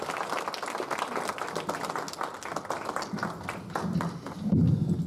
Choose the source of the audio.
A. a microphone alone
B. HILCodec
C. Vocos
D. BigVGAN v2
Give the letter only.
A